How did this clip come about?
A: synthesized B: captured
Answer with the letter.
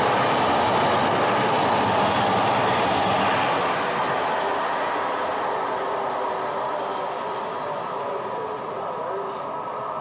B